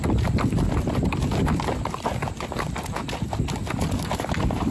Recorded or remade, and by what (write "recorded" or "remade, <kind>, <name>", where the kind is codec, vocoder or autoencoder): recorded